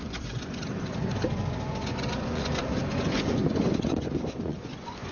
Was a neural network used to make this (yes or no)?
yes